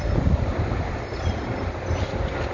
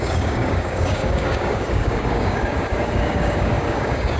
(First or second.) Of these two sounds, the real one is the first